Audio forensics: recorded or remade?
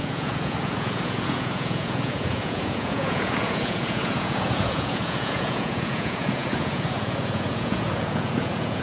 remade